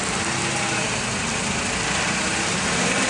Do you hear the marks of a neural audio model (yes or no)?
no